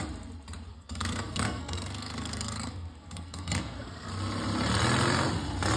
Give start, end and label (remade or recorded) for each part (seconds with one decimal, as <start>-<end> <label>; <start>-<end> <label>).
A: 0.0-0.7 recorded; 0.7-4.1 remade; 4.1-5.8 recorded